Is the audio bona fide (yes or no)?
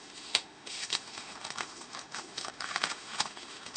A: no